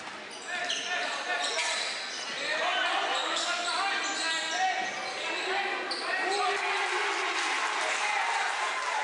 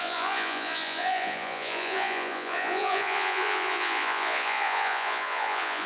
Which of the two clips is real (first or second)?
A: first